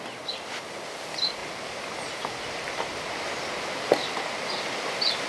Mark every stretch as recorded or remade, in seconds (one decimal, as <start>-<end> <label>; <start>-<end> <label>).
0.0-5.3 recorded